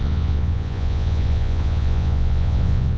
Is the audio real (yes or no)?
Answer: no